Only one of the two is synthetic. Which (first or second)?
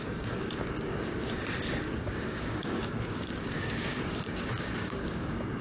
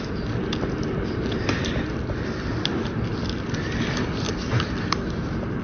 first